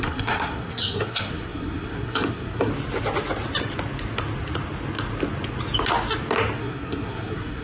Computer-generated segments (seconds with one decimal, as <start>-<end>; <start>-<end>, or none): 0.0-2.7; 6.6-7.6